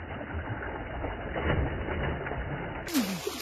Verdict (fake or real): real